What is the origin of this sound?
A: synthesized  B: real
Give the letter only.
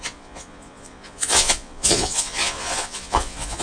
A